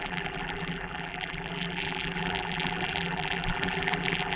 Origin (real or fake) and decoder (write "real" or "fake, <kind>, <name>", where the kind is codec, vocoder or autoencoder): fake, vocoder, BigVGAN v2